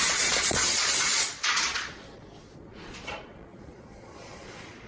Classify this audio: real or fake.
fake